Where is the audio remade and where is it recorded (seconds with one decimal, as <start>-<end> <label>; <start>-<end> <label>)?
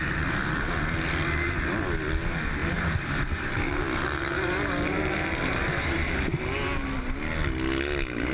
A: 0.0-2.6 recorded; 2.6-6.4 remade; 6.4-8.3 recorded